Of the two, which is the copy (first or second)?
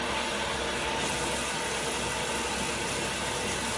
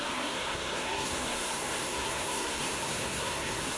second